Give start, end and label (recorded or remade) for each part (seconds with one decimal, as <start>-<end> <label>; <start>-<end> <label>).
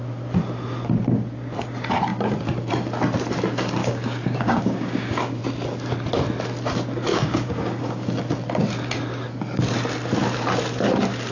0.0-3.8 recorded; 3.8-5.4 remade; 5.4-7.1 recorded; 7.1-8.2 remade; 8.2-11.3 recorded